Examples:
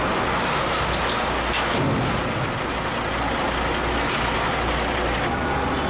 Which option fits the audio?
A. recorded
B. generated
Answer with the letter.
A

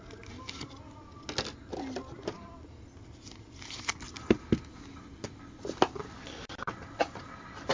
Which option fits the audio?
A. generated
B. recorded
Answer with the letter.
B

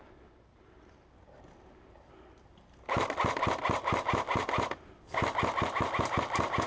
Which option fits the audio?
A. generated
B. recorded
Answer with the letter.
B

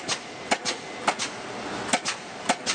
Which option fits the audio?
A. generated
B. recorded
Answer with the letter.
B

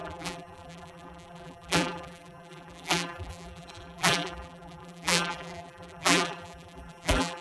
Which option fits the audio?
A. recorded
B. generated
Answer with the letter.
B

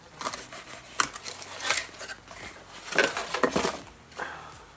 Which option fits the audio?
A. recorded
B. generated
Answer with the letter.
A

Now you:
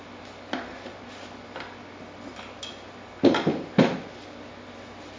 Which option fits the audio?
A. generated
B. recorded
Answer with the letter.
B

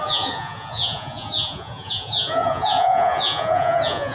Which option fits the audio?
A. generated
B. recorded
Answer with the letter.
A